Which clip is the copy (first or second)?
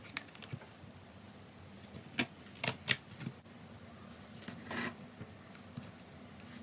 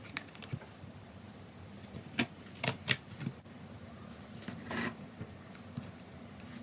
second